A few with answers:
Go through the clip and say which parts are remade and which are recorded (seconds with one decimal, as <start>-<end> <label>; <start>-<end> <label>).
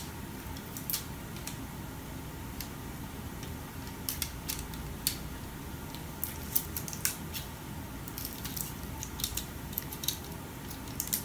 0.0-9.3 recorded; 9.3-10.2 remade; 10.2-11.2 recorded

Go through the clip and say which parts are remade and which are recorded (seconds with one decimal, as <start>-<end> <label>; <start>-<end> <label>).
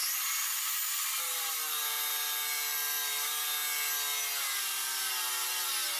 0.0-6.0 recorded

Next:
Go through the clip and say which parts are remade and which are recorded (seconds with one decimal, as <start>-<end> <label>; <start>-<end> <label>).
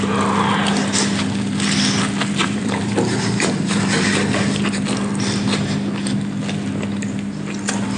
0.0-2.4 recorded; 2.4-4.1 remade; 4.1-8.0 recorded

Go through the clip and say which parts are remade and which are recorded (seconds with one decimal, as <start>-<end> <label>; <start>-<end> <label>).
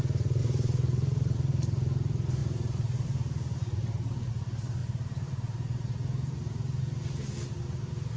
0.0-0.4 recorded; 0.4-1.5 remade; 1.5-2.4 recorded; 2.4-4.3 remade; 4.3-4.8 recorded; 4.8-5.9 remade; 5.9-8.2 recorded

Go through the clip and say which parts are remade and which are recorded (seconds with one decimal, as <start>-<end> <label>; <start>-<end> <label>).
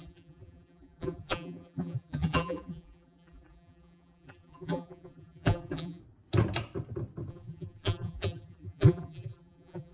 0.0-6.0 remade; 6.0-7.3 recorded; 7.3-9.9 remade